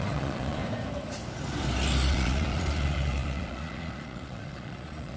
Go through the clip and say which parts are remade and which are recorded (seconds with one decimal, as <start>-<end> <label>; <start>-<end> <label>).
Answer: 0.0-0.6 remade; 0.6-2.1 recorded; 2.1-5.2 remade